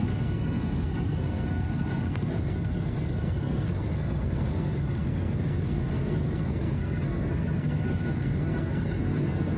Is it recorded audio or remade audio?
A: remade